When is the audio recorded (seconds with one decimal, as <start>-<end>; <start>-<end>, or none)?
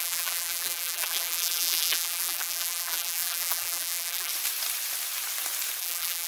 4.3-5.8